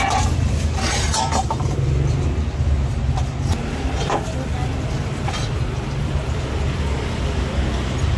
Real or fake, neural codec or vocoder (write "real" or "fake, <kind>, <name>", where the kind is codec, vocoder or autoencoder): real